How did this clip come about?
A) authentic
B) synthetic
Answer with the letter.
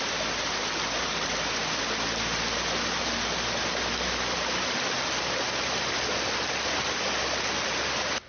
A